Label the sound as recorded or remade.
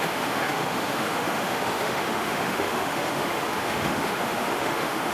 remade